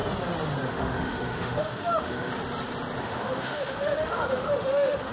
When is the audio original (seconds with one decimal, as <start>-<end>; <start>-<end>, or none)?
0.0-0.7; 2.3-3.0